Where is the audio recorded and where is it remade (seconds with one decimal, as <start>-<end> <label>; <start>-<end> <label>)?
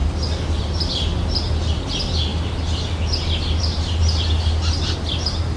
0.0-5.6 recorded